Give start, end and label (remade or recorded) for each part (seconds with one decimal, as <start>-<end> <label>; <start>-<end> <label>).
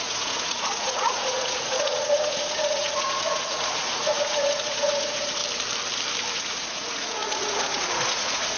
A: 0.0-5.4 remade; 5.4-6.3 recorded; 6.3-8.6 remade